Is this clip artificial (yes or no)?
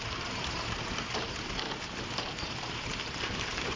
yes